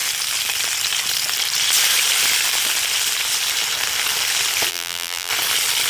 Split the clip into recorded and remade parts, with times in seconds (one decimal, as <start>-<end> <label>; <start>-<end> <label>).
0.0-4.7 recorded; 4.7-5.3 remade; 5.3-5.9 recorded